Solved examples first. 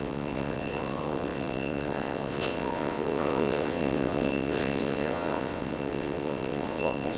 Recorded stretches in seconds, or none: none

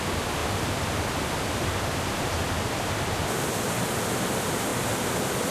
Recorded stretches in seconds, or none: 0.0-5.5

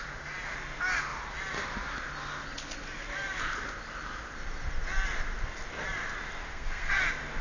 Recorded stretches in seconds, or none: 0.0-6.5; 7.0-7.4

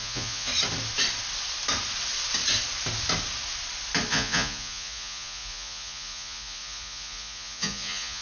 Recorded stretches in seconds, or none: 0.5-4.1

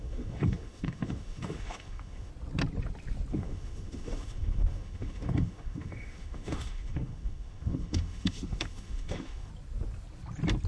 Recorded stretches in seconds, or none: 2.3-3.3; 9.5-10.7